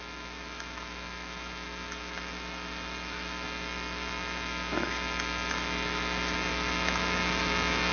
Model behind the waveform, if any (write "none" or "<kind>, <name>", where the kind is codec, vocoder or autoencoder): autoencoder, DAC-VAE